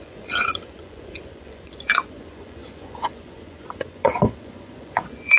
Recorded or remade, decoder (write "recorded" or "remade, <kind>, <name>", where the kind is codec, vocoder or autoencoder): remade, vocoder, Vocos